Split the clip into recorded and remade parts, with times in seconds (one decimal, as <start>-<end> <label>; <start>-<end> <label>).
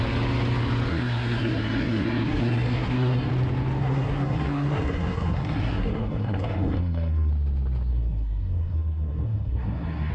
0.0-0.9 recorded; 0.9-3.3 remade; 3.3-3.8 recorded; 3.8-7.3 remade; 7.3-7.9 recorded; 7.9-10.1 remade